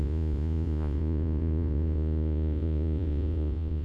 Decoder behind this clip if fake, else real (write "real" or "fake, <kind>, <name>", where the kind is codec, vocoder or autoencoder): fake, vocoder, Vocos